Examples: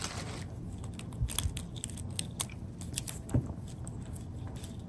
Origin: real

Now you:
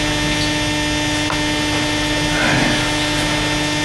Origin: real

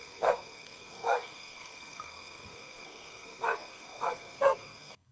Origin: fake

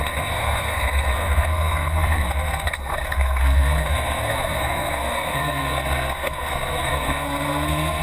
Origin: fake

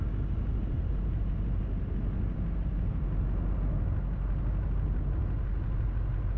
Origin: real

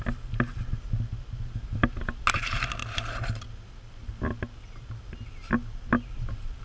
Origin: real